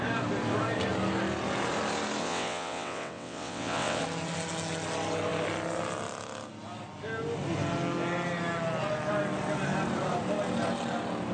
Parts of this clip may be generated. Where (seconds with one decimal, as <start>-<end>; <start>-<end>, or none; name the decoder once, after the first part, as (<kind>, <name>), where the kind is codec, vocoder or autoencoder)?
2.2-4.0 (vocoder, WaveNeXt)